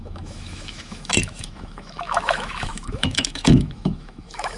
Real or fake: fake